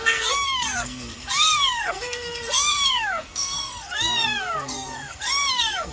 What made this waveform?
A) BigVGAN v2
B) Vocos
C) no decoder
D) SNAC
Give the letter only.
D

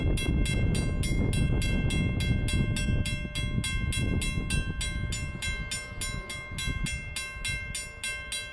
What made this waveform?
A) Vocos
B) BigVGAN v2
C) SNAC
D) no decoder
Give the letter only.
D